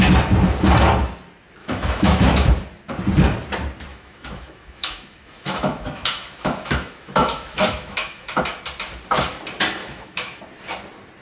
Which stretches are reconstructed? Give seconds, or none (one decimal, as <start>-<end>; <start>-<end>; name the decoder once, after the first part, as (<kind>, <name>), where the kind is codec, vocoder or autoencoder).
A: 1.6-2.5 (autoencoder, DAC-VAE); 3.9-8.4; 9.8-10.4